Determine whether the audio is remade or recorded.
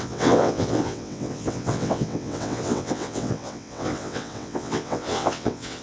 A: remade